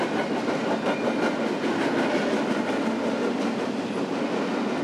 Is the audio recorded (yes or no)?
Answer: yes